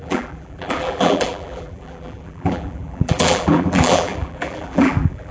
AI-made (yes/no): yes